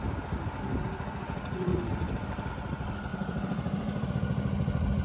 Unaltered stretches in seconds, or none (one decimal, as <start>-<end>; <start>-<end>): 0.0-1.7; 2.5-3.1; 4.1-5.0

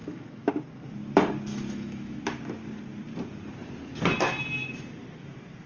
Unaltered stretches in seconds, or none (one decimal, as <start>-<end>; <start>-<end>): 0.5-1.5; 2.2-5.7

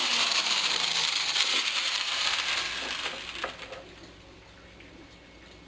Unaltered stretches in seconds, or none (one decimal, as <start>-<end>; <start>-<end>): 2.3-5.7

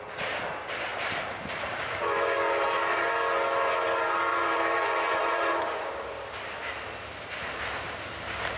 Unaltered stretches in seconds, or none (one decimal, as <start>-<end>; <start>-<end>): 0.0-0.9; 3.0-4.3; 5.5-8.6

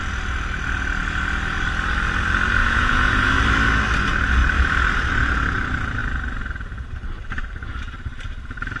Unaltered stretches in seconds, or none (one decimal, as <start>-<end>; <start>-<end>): 0.0-2.6; 3.4-8.8

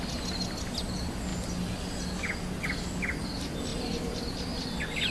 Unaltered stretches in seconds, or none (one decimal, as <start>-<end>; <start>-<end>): 0.0-5.1

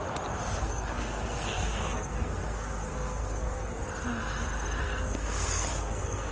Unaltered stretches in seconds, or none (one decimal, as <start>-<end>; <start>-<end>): 0.0-0.6; 3.8-4.8